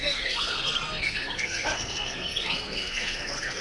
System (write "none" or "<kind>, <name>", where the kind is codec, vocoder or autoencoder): codec, SNAC